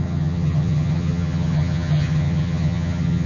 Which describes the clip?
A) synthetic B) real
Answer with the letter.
A